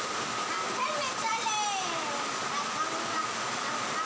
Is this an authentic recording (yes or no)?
yes